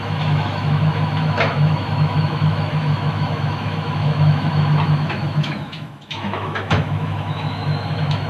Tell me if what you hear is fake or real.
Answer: fake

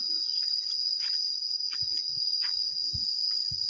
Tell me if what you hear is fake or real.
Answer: real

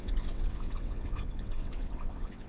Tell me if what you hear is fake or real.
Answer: fake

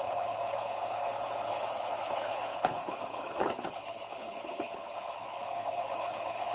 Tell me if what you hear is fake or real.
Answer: fake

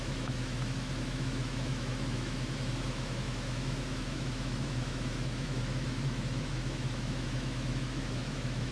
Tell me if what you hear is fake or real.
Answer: fake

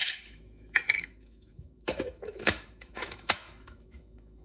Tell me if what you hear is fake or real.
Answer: fake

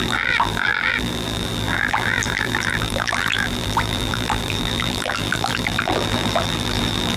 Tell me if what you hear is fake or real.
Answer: fake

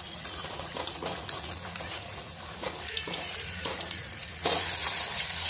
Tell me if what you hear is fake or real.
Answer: fake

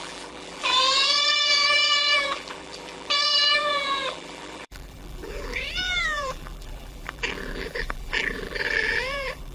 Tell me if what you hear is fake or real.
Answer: fake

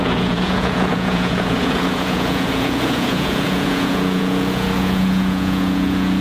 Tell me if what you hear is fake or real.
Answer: fake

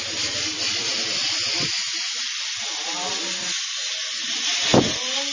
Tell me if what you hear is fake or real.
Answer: real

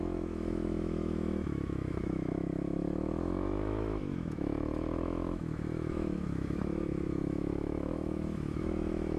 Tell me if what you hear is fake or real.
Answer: fake